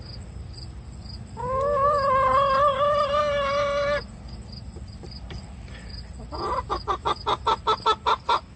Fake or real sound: real